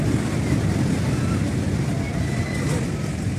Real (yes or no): yes